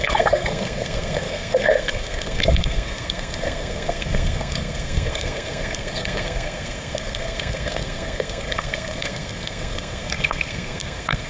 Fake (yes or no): yes